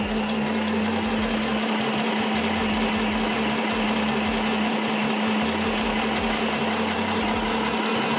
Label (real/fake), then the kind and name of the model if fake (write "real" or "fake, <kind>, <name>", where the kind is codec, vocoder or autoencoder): real